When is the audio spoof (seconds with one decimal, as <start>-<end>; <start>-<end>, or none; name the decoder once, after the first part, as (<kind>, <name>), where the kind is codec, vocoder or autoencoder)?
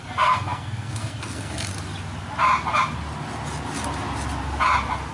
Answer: 0.0-1.7 (codec, SNAC)